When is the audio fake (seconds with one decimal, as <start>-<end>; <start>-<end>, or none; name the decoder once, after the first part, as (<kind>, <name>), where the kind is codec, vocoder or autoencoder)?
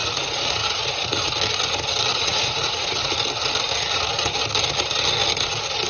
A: 0.0-1.3 (vocoder, Vocos); 2.1-3.1